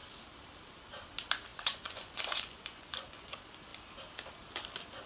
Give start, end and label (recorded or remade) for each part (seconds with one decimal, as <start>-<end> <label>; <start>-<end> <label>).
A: 0.0-1.5 recorded; 1.5-3.3 remade; 3.3-5.1 recorded